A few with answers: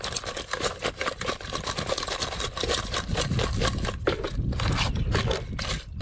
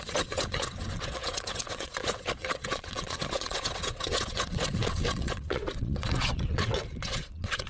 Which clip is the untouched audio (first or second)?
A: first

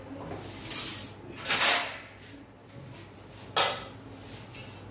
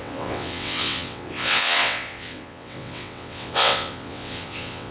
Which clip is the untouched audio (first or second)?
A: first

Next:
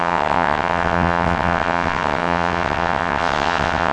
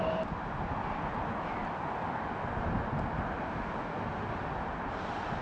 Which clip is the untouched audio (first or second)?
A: second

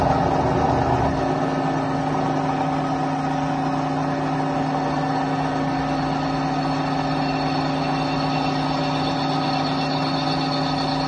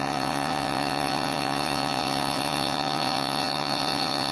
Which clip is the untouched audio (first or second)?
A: first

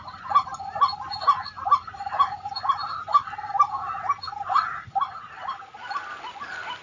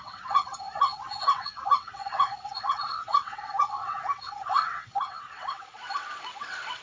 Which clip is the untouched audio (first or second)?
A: first